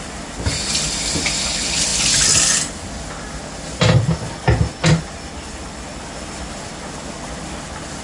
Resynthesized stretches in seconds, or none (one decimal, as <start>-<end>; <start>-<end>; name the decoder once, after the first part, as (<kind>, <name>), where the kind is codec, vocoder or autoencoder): none